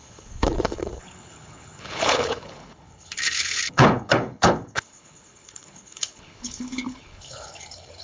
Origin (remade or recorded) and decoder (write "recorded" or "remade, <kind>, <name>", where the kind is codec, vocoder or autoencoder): remade, codec, HILCodec